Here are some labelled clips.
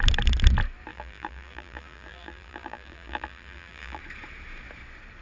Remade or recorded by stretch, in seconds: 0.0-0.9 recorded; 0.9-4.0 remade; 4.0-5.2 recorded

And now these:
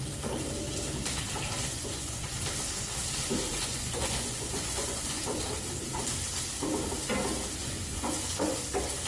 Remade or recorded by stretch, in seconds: 0.0-1.6 recorded; 1.6-2.2 remade; 2.2-3.5 recorded; 3.5-5.4 remade; 5.4-7.6 recorded; 7.6-8.6 remade; 8.6-9.1 recorded

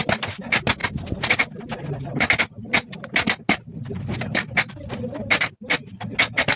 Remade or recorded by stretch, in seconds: 0.0-6.6 recorded

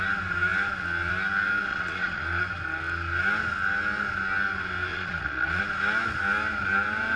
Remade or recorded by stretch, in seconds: 0.0-1.7 recorded; 1.7-2.4 remade; 2.4-4.9 recorded; 4.9-5.6 remade; 5.6-7.2 recorded